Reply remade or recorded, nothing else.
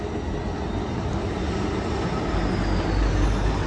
recorded